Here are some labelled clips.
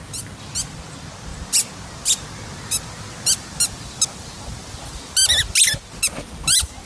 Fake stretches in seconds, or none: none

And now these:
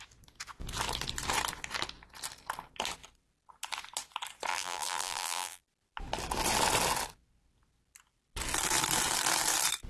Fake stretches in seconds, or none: 4.5-5.6

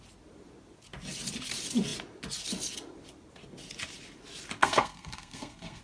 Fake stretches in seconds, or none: 4.6-5.8